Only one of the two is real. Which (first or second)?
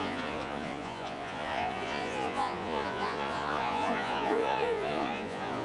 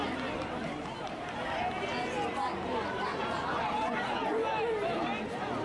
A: second